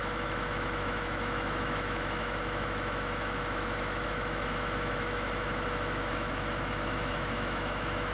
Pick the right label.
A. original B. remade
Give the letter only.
B